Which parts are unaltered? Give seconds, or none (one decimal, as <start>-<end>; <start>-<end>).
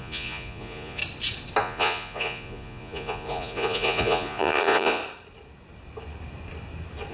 1.0-1.6; 5.0-7.1